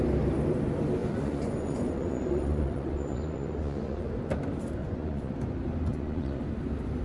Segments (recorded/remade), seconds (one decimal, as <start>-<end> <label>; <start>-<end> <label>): 0.0-1.0 recorded; 1.0-4.1 remade; 4.1-4.8 recorded; 4.8-5.3 remade; 5.3-5.9 recorded; 5.9-6.4 remade; 6.4-7.0 recorded

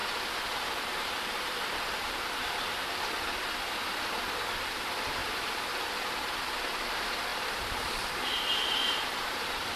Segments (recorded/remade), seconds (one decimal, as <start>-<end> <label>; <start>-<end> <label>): 0.0-2.9 remade; 2.9-5.2 recorded; 5.2-6.4 remade; 6.4-7.3 recorded; 7.3-9.8 remade

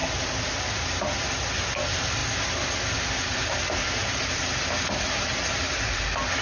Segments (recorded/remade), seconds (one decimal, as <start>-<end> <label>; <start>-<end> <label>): 0.0-6.4 recorded

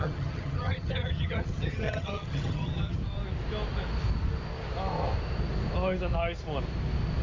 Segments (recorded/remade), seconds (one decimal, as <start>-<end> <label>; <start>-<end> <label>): 0.0-3.0 remade; 3.0-7.2 recorded

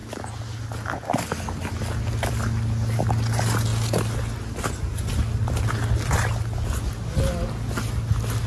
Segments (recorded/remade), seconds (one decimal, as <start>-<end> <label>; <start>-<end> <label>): 0.0-8.5 recorded

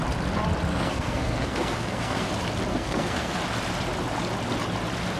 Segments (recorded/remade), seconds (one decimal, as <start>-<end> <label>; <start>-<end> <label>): 0.0-0.7 recorded; 0.7-2.3 remade; 2.3-2.7 recorded; 2.7-3.4 remade; 3.4-5.2 recorded

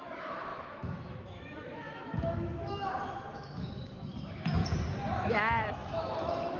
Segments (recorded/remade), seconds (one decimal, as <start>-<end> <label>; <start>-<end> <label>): 0.0-4.6 remade; 4.6-5.3 recorded; 5.3-6.6 remade